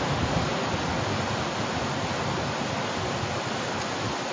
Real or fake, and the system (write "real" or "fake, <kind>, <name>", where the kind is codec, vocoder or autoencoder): real